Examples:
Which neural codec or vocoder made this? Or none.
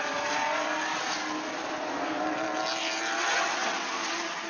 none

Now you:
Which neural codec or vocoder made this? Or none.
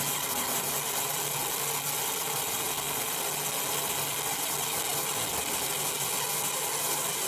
none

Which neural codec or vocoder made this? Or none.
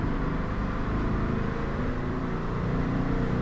vocoder, BigVGAN v2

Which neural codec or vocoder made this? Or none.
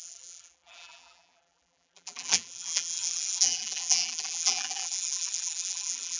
vocoder, BigVGAN v2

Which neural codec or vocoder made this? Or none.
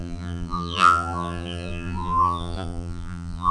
vocoder, BigVGAN v2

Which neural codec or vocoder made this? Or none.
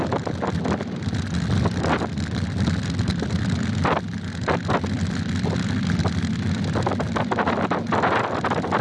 none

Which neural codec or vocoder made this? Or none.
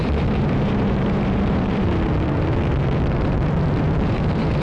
vocoder, BigVGAN v2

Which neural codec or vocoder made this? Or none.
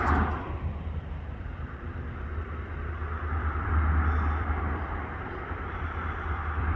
vocoder, BigVGAN v2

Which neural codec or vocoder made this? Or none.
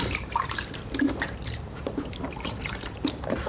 vocoder, BigVGAN v2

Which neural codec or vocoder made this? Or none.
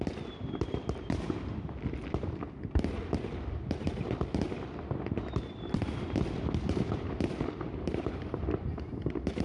vocoder, BigVGAN v2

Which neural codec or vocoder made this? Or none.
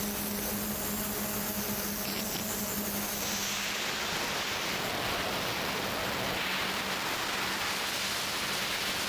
none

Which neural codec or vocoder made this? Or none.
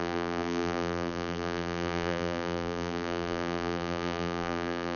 vocoder, BigVGAN v2